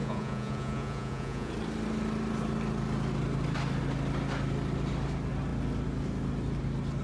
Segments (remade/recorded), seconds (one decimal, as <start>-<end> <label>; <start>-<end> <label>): 0.0-1.5 remade; 1.5-7.0 recorded